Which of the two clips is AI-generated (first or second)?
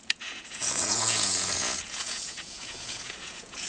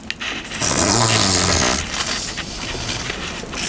first